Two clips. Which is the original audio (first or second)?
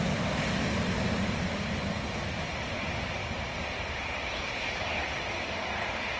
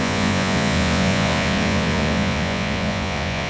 first